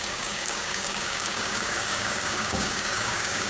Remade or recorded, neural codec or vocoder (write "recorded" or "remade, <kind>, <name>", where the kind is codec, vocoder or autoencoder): remade, codec, DAC